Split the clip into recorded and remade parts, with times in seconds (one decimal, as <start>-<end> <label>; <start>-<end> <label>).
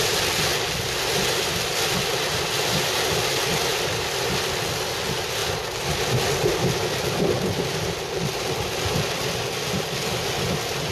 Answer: 0.0-10.9 recorded